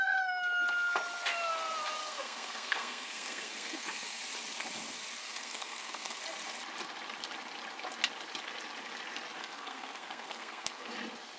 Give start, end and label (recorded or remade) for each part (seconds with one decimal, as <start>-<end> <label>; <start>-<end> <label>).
0.0-2.0 recorded; 2.0-4.2 remade; 4.2-5.2 recorded; 5.2-6.2 remade; 6.2-9.4 recorded; 9.4-10.9 remade; 10.9-11.4 recorded